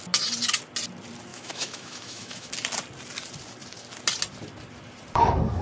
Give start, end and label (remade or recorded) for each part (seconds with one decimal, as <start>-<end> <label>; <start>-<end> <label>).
0.0-1.3 recorded; 1.3-2.5 remade; 2.5-5.6 recorded